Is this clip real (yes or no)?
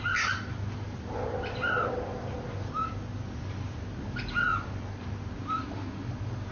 yes